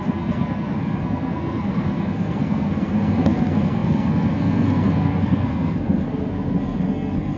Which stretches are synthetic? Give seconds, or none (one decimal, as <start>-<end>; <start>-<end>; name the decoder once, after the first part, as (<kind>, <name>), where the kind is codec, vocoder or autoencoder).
0.0-7.4 (codec, SNAC)